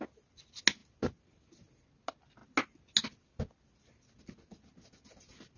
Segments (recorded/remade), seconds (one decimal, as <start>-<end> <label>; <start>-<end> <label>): 0.0-5.6 recorded